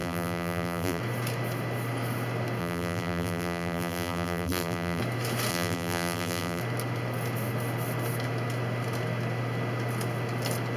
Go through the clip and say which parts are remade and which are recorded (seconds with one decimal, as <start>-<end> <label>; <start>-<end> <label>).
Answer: 0.0-1.0 remade; 1.0-2.6 recorded; 2.6-5.0 remade; 5.0-5.5 recorded; 5.5-6.6 remade; 6.6-10.8 recorded

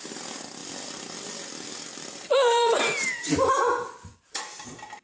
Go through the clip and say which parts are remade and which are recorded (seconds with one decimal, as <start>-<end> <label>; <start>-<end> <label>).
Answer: 0.0-0.6 recorded; 0.6-2.8 remade; 2.8-5.0 recorded

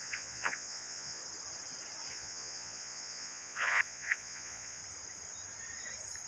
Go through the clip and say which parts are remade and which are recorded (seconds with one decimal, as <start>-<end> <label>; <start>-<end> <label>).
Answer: 0.0-1.2 remade; 1.2-2.1 recorded; 2.1-4.8 remade; 4.8-6.3 recorded

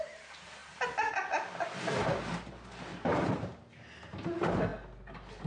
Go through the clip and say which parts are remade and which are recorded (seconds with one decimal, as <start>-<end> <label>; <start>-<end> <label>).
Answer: 0.0-2.9 recorded; 2.9-3.6 remade; 3.6-5.5 recorded

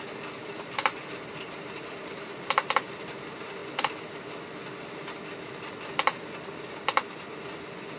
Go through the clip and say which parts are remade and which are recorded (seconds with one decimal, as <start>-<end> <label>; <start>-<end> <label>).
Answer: 0.0-0.4 recorded; 0.4-3.0 remade; 3.0-8.0 recorded

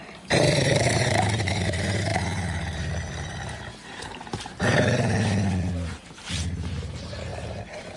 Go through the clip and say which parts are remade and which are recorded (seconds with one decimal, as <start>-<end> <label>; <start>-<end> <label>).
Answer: 0.0-8.0 remade

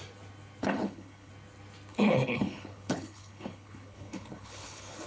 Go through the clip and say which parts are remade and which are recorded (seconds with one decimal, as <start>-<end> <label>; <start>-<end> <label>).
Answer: 0.0-0.6 recorded; 0.6-1.3 remade; 1.3-1.9 recorded; 1.9-5.1 remade

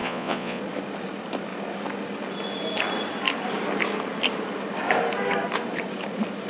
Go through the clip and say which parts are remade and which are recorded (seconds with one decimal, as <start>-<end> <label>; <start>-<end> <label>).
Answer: 0.0-0.6 remade; 0.6-6.5 recorded